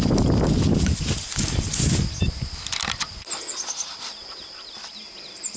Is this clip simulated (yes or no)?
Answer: no